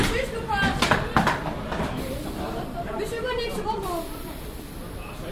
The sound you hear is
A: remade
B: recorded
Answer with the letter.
B